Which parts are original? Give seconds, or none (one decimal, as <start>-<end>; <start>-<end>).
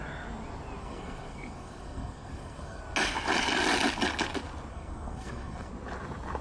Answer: 0.0-0.8; 2.8-4.7; 5.7-6.4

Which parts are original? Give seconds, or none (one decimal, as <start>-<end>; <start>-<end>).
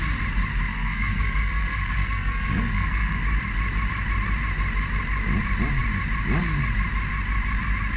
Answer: 0.0-0.7; 3.2-8.0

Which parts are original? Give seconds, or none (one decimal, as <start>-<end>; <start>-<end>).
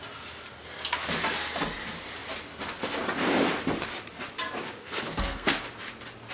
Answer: 0.0-4.8; 5.5-6.3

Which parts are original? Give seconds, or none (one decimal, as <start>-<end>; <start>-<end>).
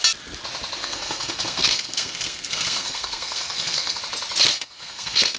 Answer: 0.0-0.8; 4.0-4.5